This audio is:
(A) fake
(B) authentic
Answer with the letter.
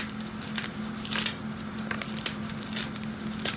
B